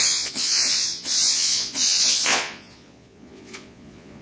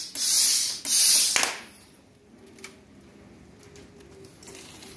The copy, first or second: first